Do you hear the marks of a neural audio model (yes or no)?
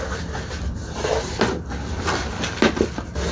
no